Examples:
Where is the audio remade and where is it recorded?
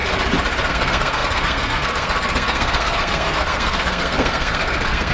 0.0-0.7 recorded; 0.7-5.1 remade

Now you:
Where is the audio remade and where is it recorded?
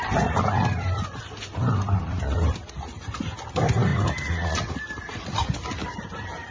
0.0-3.9 remade; 3.9-4.8 recorded; 4.8-6.5 remade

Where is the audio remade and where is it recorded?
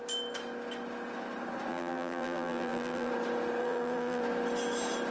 0.0-1.7 recorded; 1.7-3.1 remade; 3.1-3.6 recorded; 3.6-4.2 remade; 4.2-5.1 recorded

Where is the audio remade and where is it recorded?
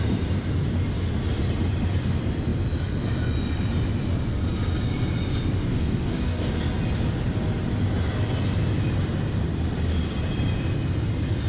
0.0-5.7 recorded; 5.7-6.5 remade; 6.5-11.5 recorded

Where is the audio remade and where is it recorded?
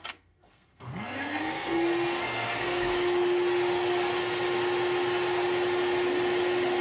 0.0-2.9 remade; 2.9-6.8 recorded